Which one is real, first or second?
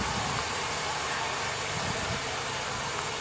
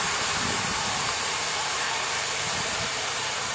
first